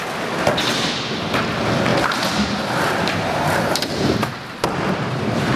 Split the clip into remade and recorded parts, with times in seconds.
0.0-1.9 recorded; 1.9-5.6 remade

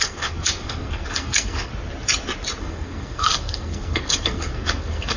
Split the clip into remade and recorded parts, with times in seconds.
0.0-1.7 remade; 1.7-2.6 recorded; 2.6-5.2 remade

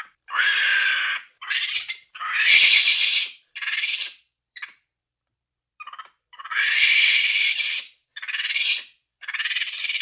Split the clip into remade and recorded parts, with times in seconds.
0.0-0.7 remade; 0.7-1.5 recorded; 1.5-10.0 remade

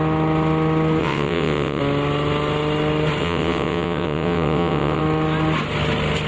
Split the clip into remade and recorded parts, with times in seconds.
0.0-1.0 recorded; 1.0-1.8 remade; 1.8-3.2 recorded; 3.2-5.0 remade; 5.0-6.3 recorded

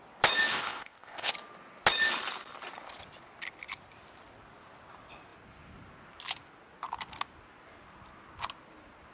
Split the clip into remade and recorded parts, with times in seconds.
0.0-0.5 recorded; 0.5-1.3 remade; 1.3-9.1 recorded